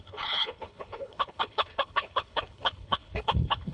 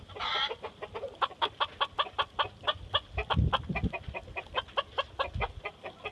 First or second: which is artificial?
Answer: first